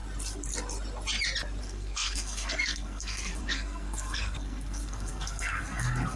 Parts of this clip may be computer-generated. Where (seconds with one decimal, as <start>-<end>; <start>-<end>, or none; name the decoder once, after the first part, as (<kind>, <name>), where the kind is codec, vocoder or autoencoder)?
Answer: 1.6-6.2 (codec, SNAC)